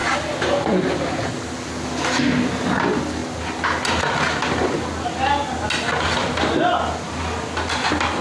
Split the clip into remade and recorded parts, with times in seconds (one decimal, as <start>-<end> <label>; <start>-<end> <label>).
0.0-8.2 recorded